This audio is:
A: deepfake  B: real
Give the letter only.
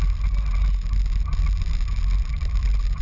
B